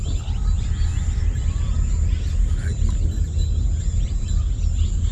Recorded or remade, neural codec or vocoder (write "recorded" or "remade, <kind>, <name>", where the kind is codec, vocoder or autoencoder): recorded